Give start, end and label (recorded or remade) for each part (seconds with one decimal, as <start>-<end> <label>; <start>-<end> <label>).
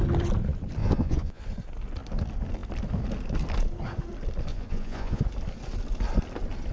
0.0-0.8 recorded; 0.8-1.4 remade; 1.4-4.5 recorded; 4.5-5.2 remade; 5.2-6.7 recorded